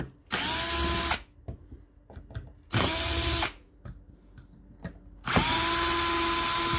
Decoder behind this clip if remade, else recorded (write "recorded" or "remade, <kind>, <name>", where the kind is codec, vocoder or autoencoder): recorded